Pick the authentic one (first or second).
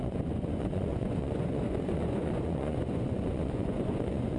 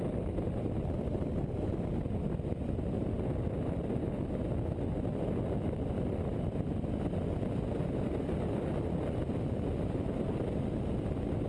second